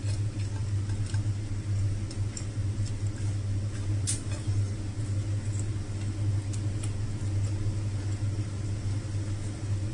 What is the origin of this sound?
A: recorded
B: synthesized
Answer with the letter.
A